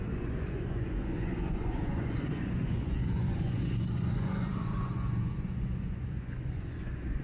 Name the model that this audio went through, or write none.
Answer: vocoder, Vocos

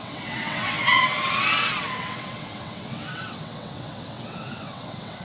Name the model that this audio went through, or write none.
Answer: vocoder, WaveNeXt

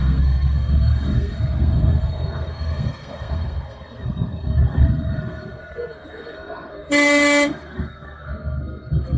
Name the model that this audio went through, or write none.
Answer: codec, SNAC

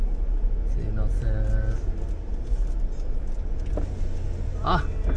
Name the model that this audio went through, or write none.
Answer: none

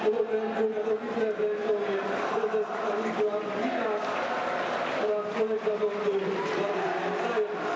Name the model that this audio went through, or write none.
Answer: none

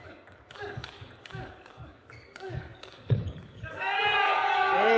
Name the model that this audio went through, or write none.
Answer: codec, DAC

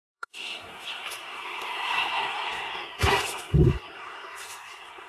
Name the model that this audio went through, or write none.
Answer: codec, SNAC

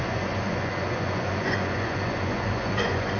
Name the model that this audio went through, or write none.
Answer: vocoder, Vocos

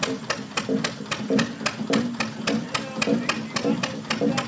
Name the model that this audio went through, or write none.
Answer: none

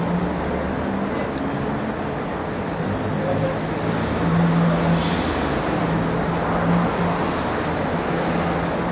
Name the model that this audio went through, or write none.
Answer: none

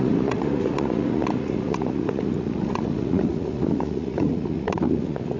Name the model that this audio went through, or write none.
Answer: vocoder, Vocos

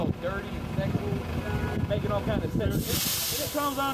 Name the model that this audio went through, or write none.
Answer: none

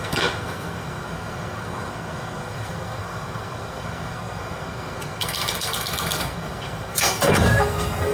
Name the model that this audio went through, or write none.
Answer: codec, SNAC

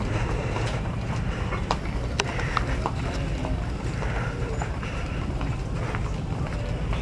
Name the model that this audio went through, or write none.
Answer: vocoder, BigVGAN v2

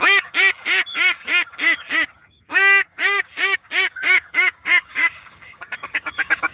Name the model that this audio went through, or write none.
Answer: codec, DAC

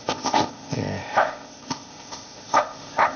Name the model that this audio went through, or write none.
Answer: codec, ZipCodec